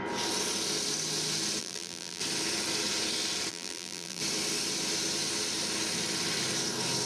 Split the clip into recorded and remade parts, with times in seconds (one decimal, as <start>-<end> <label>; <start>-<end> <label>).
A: 0.0-1.6 recorded; 1.6-2.2 remade; 2.2-3.5 recorded; 3.5-4.2 remade; 4.2-7.1 recorded